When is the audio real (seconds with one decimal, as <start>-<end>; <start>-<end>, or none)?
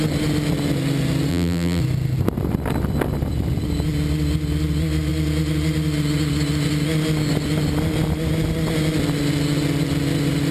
0.0-1.3; 1.8-10.5